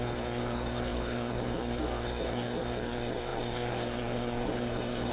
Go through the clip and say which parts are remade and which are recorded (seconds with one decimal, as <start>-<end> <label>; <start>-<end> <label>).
0.0-5.1 remade

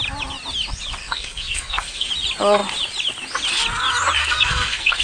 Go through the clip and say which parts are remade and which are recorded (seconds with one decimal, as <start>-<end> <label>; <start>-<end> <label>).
0.0-1.0 recorded; 1.0-2.1 remade; 2.1-4.2 recorded; 4.2-5.0 remade

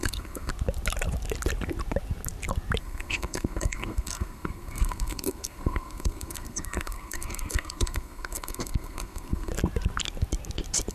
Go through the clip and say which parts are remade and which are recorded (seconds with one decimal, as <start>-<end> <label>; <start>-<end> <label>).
0.0-0.5 remade; 0.5-2.8 recorded; 2.8-9.5 remade; 9.5-10.9 recorded

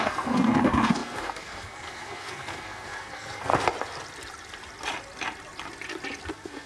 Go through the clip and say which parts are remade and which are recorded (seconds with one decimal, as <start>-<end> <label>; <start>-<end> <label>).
0.0-3.5 remade; 3.5-6.3 recorded; 6.3-6.7 remade

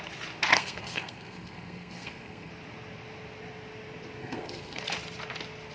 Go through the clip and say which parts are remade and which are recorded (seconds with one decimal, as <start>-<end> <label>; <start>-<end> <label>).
0.0-0.5 recorded; 0.5-2.5 remade; 2.5-4.2 recorded; 4.2-4.8 remade; 4.8-5.7 recorded

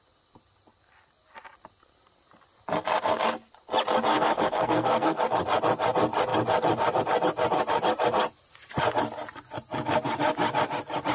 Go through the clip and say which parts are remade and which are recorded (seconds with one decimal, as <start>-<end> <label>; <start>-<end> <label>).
0.0-4.1 recorded; 4.1-5.2 remade; 5.2-11.1 recorded

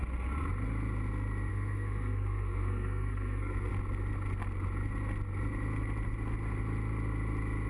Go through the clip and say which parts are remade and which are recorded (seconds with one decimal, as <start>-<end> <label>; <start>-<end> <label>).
0.0-1.5 recorded; 1.5-3.7 remade; 3.7-7.7 recorded